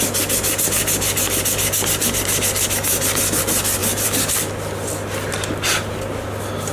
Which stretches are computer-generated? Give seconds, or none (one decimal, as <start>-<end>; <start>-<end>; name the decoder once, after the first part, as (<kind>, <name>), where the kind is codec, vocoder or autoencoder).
3.8-4.3 (vocoder, BigVGAN v2)

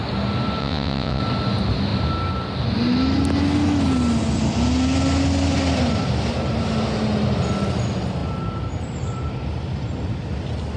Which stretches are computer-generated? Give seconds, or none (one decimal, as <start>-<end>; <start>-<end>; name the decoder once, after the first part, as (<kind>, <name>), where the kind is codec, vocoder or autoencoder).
0.6-1.2 (vocoder, WaveNeXt)